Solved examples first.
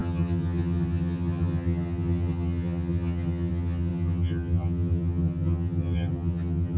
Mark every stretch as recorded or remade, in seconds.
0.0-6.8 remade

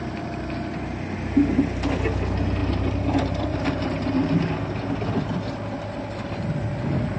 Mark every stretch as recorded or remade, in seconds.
0.0-2.6 recorded; 2.6-3.8 remade; 3.8-7.2 recorded

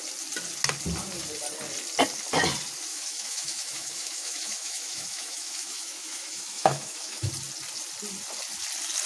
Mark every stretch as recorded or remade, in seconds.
0.0-2.9 recorded; 2.9-7.3 remade; 7.3-9.1 recorded

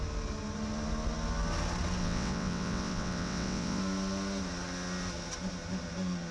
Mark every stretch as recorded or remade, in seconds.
0.0-2.0 recorded; 2.0-3.8 remade; 3.8-6.3 recorded

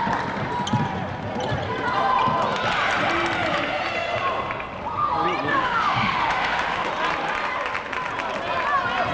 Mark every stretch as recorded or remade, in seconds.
0.0-5.5 recorded; 5.5-6.9 remade; 6.9-9.1 recorded